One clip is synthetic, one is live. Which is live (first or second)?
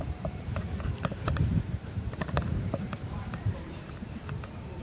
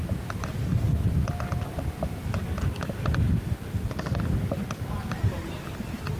second